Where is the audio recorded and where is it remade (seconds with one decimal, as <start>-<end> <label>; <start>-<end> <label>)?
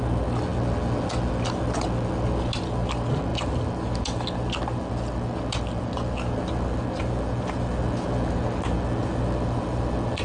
0.0-10.2 recorded